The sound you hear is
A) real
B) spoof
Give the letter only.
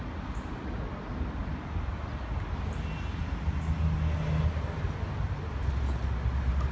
A